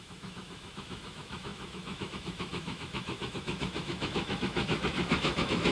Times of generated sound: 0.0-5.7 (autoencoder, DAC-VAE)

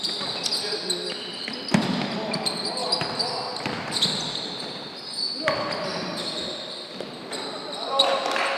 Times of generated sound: none

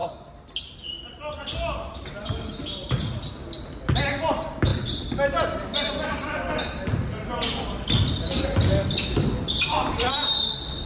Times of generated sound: none

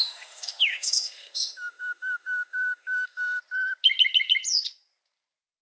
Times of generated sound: 0.0-3.4 (autoencoder, DAC-VAE)

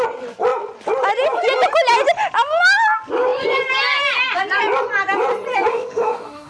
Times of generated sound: 5.7-6.5 (autoencoder, DAC-VAE)

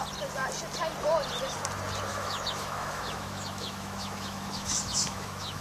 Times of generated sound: 2.1-5.6 (autoencoder, DAC-VAE)